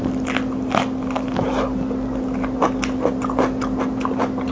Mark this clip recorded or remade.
recorded